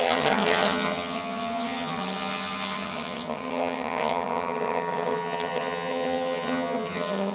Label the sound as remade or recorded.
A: remade